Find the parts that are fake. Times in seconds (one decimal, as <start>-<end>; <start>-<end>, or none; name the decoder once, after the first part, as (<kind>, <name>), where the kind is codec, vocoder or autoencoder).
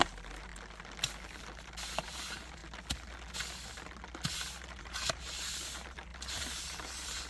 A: 0.0-0.5 (vocoder, BigVGAN v2); 2.0-2.6; 4.8-6.1; 6.6-7.3